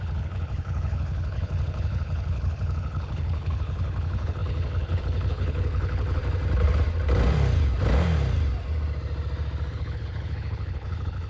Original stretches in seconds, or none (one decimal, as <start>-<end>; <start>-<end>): 6.2-9.7